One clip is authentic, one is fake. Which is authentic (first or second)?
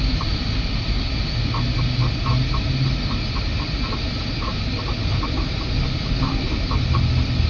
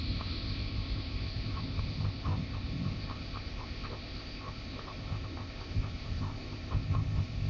first